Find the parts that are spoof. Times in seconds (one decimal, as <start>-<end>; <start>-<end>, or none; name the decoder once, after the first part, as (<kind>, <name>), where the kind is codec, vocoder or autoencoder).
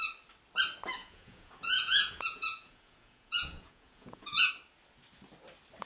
1.0-4.5 (vocoder, Vocos)